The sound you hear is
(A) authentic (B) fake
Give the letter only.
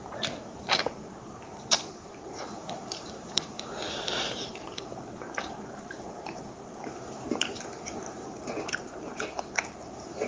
B